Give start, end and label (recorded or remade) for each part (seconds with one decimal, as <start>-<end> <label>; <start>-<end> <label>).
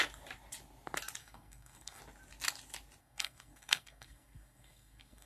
0.0-1.2 recorded; 1.2-2.0 remade; 2.0-3.0 recorded; 3.0-5.3 remade